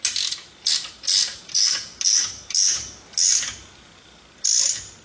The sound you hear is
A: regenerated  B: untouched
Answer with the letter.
B